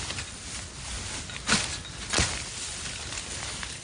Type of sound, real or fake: real